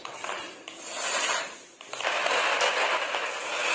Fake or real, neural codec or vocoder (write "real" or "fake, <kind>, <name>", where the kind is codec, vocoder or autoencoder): real